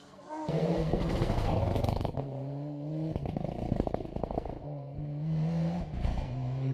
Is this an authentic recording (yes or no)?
no